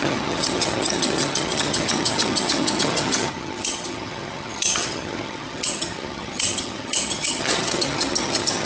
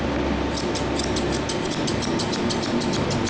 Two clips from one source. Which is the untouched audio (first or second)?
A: second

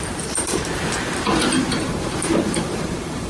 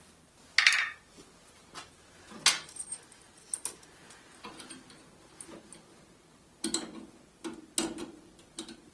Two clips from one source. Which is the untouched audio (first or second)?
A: second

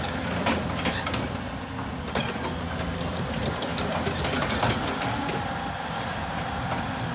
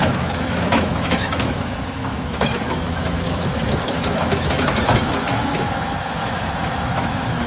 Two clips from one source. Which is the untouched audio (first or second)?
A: first